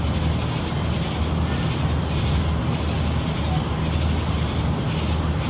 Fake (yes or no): no